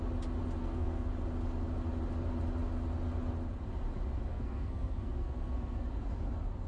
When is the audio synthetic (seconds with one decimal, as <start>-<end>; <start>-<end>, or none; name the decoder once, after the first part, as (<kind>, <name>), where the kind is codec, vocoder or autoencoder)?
0.6-1.1 (codec, SNAC); 4.3-5.8